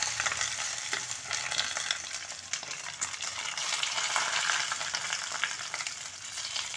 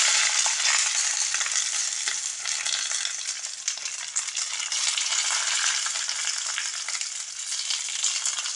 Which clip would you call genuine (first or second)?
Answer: second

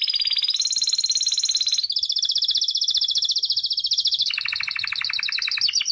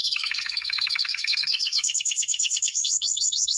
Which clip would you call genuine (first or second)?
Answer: first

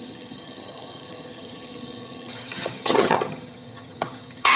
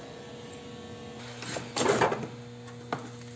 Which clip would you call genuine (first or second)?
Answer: second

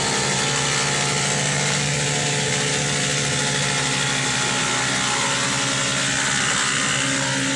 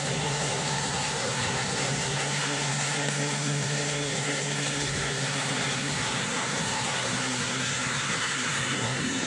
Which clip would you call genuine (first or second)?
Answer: first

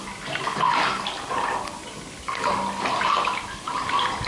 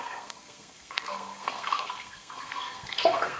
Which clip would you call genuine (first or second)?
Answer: first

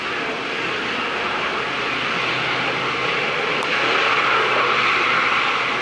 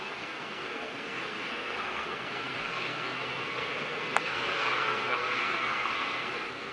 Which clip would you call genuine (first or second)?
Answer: first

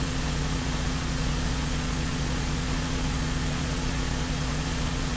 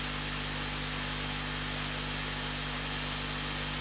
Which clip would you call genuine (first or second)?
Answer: second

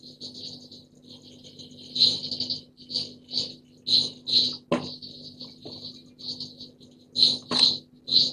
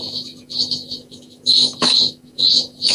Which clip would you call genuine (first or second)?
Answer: first